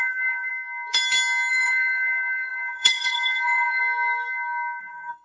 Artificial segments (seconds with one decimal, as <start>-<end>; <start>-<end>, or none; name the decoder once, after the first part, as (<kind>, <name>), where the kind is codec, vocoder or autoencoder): 0.0-0.5 (codec, SNAC); 1.5-3.8; 4.8-5.2